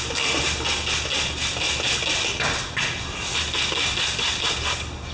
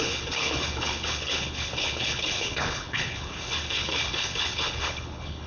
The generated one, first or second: second